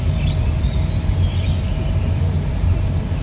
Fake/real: real